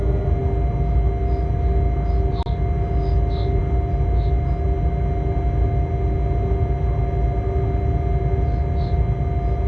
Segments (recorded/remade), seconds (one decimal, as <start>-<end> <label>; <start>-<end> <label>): 0.0-9.7 recorded